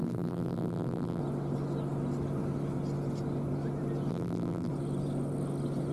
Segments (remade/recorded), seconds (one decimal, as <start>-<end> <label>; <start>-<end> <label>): 0.0-1.2 remade; 1.2-4.1 recorded; 4.1-4.7 remade; 4.7-5.9 recorded